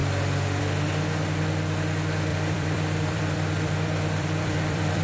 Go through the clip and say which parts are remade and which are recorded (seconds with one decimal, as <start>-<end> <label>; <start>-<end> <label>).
0.0-2.3 recorded; 2.3-5.0 remade